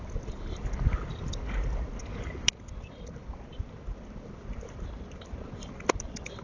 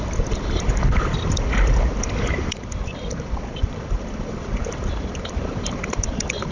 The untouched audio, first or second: first